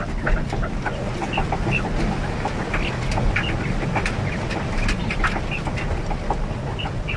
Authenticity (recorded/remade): recorded